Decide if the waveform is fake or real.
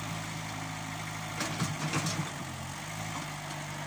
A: real